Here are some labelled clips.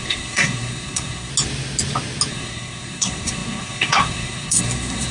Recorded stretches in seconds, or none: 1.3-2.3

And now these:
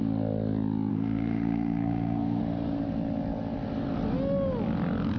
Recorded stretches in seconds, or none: 0.0-0.9; 2.4-5.2

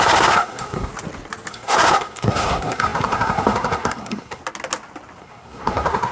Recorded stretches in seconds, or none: 0.9-1.5; 4.4-5.2

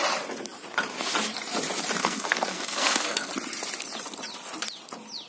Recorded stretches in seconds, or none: 0.0-2.0; 3.3-5.3

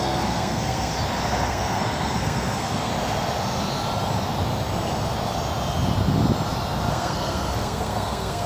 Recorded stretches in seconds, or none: 0.9-1.5; 2.9-6.9

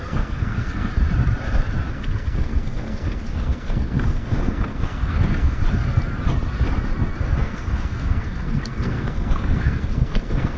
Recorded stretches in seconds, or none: 0.9-1.9; 5.6-7.2

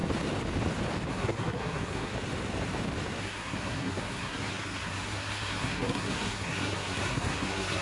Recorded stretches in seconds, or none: 0.0-1.1; 2.1-3.2

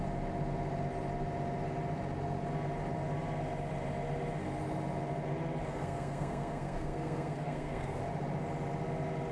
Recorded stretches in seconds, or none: 0.0-5.7; 8.0-9.3